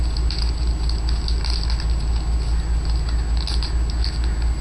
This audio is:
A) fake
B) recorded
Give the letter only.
B